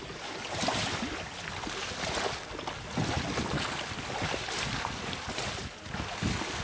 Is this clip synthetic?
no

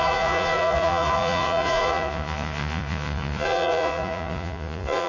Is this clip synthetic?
yes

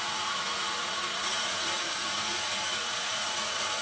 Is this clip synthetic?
yes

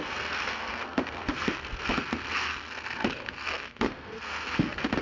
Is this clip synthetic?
yes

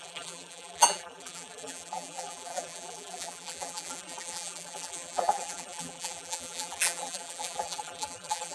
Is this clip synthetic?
yes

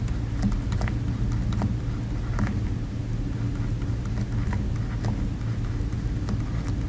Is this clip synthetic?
no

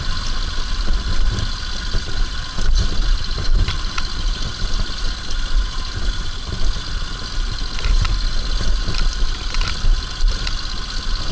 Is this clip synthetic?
no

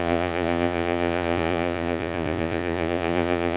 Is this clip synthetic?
yes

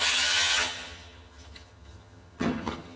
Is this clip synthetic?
yes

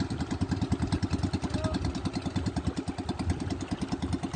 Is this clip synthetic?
no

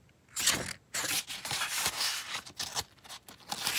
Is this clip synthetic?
no